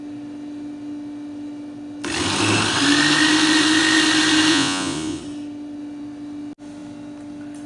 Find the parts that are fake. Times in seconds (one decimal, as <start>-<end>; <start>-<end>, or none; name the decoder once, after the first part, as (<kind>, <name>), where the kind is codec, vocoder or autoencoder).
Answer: 4.5-5.2 (vocoder, Vocos)